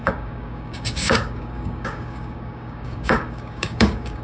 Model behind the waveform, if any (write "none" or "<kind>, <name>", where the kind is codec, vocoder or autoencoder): codec, DAC